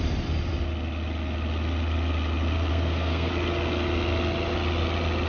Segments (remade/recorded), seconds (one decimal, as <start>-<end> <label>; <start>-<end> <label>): 0.0-2.7 recorded; 2.7-3.3 remade; 3.3-5.3 recorded